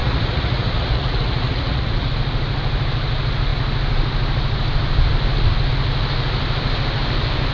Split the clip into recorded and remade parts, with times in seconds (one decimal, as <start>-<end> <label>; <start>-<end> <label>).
0.0-2.1 remade; 2.1-7.5 recorded